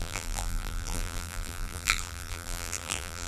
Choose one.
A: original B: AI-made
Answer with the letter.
B